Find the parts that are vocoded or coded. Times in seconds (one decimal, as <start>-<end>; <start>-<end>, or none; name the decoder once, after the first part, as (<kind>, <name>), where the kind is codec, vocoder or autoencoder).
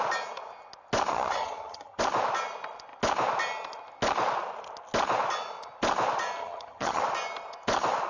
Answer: 1.1-2.0 (vocoder, HiFi-GAN); 6.4-7.0